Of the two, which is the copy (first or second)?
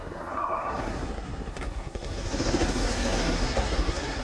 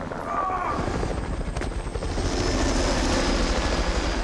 first